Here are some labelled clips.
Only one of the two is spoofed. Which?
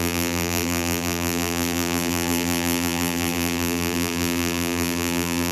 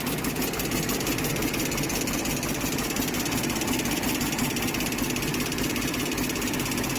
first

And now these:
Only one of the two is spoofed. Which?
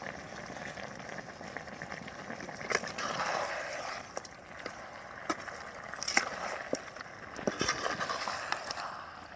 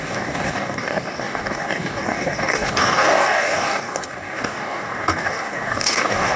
second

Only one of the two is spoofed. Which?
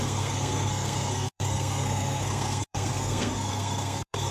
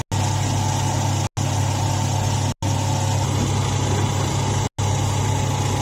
first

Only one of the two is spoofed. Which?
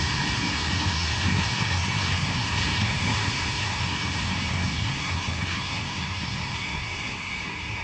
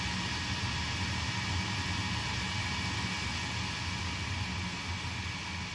first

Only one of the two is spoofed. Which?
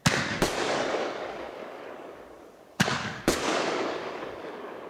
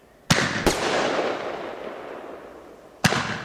first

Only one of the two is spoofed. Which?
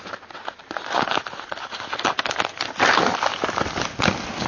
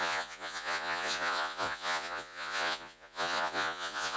second